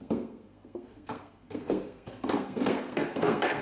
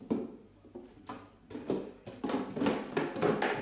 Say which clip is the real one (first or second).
second